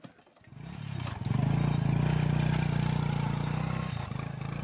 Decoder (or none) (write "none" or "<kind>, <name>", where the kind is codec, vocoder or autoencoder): none